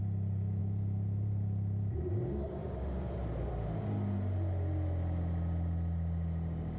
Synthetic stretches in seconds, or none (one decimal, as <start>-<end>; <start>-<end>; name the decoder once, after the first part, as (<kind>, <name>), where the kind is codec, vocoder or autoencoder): 0.6-2.2 (vocoder, BigVGAN v2); 2.6-3.5